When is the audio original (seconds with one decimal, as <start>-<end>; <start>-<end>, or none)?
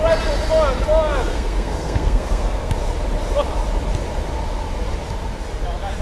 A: 0.0-1.3; 2.7-6.0